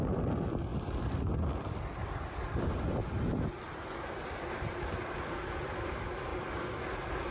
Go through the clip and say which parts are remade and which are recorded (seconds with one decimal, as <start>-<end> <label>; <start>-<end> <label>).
0.0-3.0 remade; 3.0-3.6 recorded; 3.6-6.3 remade; 6.3-7.3 recorded